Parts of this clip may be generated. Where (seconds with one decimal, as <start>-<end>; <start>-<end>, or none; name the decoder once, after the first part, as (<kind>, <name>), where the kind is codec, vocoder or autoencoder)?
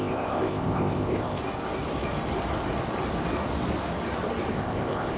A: 0.0-1.4 (codec, ZipCodec); 4.5-5.2